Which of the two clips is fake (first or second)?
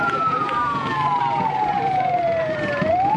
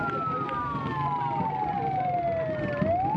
first